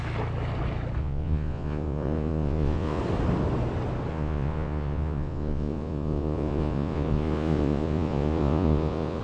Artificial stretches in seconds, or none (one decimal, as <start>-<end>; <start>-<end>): 1.0-3.0; 4.1-9.2